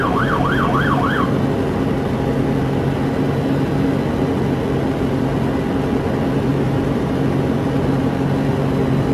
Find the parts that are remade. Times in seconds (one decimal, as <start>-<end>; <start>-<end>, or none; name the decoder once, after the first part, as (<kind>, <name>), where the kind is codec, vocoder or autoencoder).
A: 6.5-7.1 (vocoder, BigVGAN v2)